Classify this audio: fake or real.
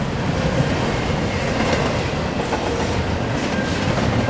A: real